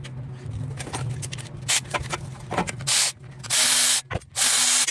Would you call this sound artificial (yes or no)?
no